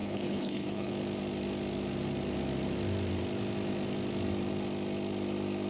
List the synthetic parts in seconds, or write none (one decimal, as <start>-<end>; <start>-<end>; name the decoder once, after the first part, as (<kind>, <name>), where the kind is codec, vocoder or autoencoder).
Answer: 0.0-0.9 (codec, HILCodec)